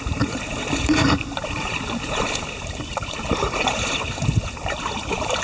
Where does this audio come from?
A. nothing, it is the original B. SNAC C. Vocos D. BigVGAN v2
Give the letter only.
D